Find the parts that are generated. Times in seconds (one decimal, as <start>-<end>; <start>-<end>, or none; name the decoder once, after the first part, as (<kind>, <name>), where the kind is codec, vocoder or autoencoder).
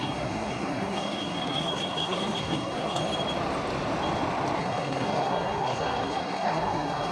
0.0-3.0 (codec, SNAC); 4.6-7.1